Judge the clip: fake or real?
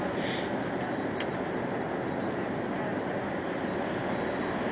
real